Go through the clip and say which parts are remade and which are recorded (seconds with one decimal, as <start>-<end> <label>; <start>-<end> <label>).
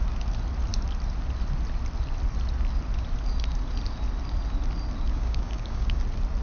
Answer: 0.0-5.1 recorded; 5.1-6.0 remade; 6.0-6.4 recorded